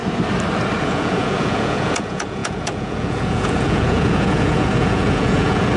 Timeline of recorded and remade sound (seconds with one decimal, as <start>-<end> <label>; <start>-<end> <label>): 0.0-0.8 recorded; 0.8-5.8 remade